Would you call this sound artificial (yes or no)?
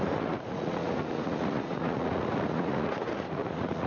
yes